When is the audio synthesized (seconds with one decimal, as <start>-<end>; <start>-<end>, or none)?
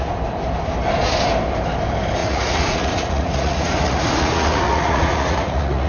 2.2-5.9